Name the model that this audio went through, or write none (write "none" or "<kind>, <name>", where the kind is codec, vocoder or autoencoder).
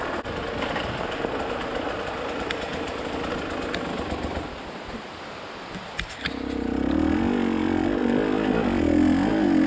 none